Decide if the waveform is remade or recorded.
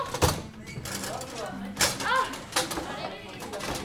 recorded